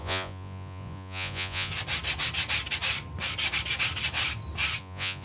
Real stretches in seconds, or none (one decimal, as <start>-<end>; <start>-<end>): 1.7-4.8